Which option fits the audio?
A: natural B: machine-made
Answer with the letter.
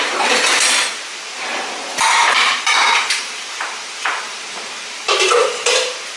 B